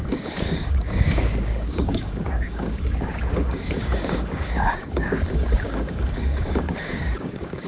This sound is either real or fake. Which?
fake